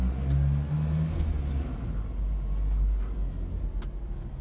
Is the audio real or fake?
real